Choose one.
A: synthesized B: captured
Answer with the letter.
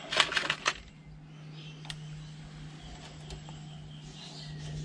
B